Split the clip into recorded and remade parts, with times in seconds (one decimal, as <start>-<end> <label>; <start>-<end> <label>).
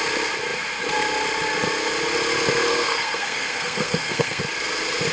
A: 0.0-2.7 recorded; 2.7-4.4 remade; 4.4-5.1 recorded